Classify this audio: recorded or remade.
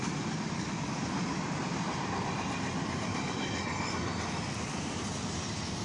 remade